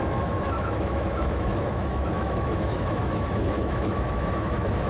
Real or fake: fake